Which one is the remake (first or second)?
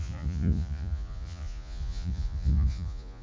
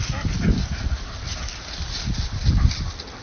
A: first